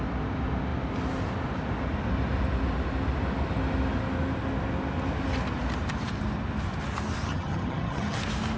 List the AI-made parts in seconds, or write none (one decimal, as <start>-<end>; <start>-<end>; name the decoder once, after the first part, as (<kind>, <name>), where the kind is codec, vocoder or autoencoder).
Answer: 7.3-8.2 (vocoder, HiFi-GAN)